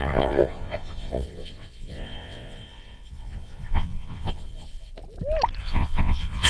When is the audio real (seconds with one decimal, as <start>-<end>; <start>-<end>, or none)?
4.9-5.6